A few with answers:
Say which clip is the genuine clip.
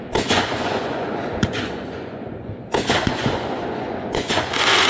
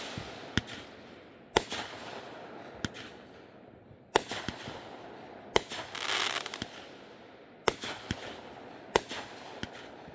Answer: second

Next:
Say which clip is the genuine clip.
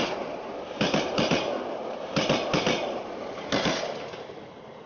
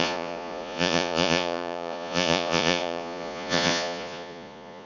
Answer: first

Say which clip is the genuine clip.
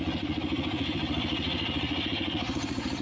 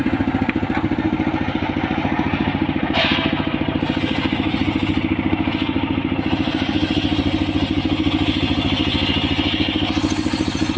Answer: second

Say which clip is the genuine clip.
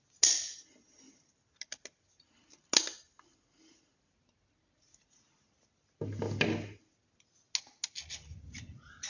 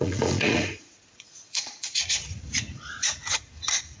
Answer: first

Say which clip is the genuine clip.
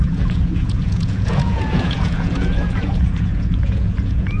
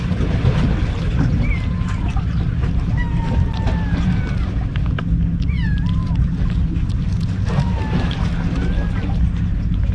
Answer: second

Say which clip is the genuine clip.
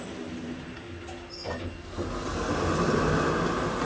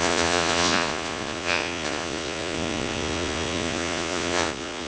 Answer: first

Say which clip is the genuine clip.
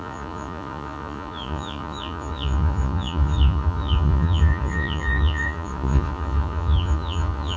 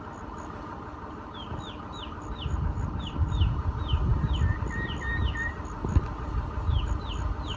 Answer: second